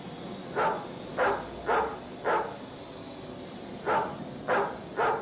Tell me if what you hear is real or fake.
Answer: real